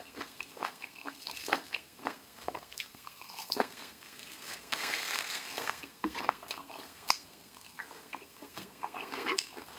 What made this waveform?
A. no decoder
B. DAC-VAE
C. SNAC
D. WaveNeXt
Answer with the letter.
C